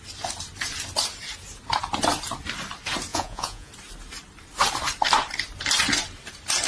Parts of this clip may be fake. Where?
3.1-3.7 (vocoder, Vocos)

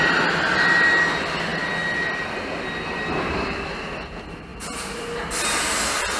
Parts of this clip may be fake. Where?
none

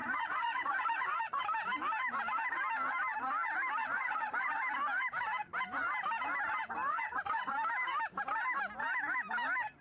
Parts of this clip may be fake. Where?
0.0-1.4 (vocoder, Vocos); 3.8-4.6; 6.9-7.5

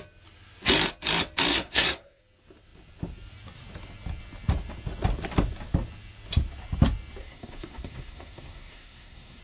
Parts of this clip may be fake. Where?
1.5-2.2 (codec, SNAC); 7.2-9.4

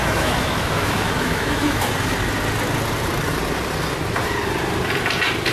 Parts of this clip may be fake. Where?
0.0-1.9 (autoencoder, DAC-VAE)

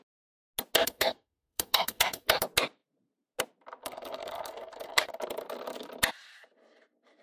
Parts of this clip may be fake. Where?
0.8-2.4 (codec, SNAC); 3.8-5.1

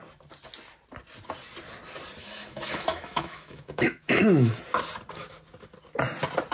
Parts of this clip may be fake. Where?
2.2-4.6 (autoencoder, DAC-VAE)

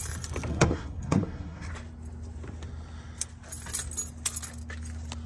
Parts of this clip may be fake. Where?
0.5-1.7 (codec, SNAC)